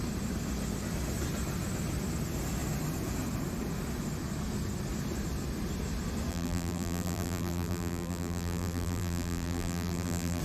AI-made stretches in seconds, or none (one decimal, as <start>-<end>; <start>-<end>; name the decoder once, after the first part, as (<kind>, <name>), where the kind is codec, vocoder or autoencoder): 6.3-10.4 (vocoder, BigVGAN v2)